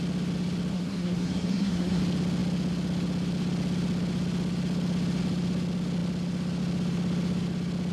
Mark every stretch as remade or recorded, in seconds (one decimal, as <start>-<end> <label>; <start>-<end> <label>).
0.0-0.7 recorded; 0.7-2.0 remade; 2.0-7.9 recorded